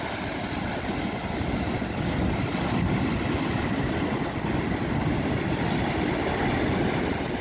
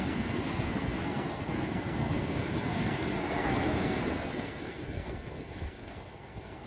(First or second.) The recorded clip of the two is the first